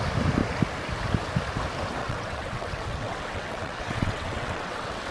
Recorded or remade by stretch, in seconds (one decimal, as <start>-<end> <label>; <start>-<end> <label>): 0.0-2.0 recorded; 2.0-5.1 remade